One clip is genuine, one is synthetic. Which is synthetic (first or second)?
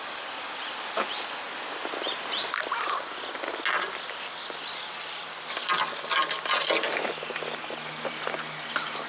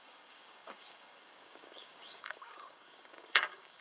second